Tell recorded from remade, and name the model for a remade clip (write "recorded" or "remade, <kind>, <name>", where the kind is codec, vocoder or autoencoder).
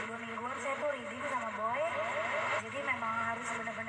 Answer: recorded